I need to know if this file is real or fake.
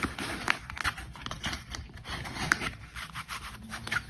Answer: fake